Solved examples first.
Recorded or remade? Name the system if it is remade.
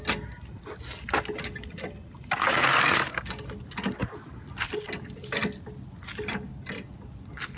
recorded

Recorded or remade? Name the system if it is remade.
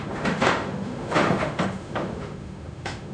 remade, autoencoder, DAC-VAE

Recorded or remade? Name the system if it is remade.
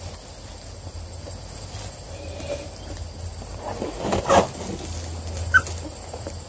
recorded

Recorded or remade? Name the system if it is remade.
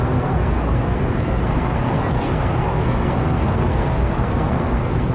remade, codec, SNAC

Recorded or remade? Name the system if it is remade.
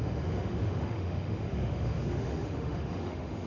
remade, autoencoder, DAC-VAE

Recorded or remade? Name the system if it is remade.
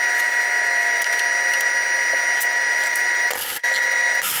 recorded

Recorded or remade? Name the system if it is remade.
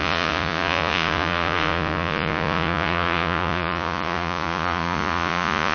remade, vocoder, Vocos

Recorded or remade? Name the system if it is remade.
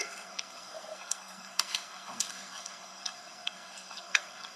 remade, codec, SNAC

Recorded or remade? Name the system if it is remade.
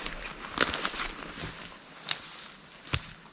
recorded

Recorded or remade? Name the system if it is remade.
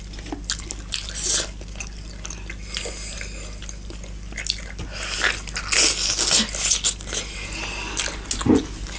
recorded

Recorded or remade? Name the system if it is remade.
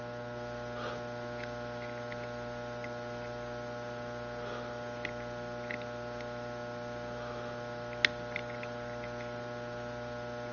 recorded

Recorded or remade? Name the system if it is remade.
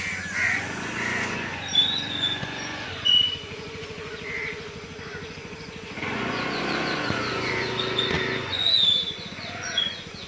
remade, vocoder, Vocos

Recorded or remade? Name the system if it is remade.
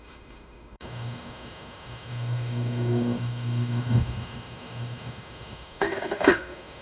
remade, autoencoder, DAC-VAE